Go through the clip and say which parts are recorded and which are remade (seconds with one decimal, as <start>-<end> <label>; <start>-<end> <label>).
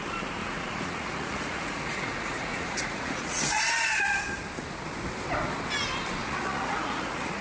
0.0-0.4 recorded; 0.4-3.6 remade; 3.6-6.2 recorded; 6.2-7.4 remade